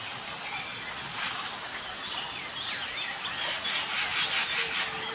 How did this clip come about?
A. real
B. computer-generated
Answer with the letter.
A